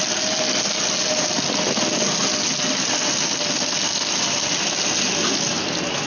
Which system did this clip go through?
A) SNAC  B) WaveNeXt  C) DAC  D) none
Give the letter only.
D